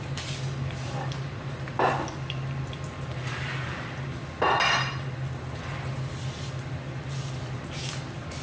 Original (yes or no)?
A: yes